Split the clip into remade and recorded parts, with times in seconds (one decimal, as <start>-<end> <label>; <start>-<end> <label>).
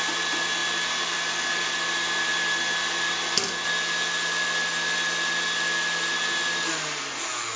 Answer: 0.0-7.6 recorded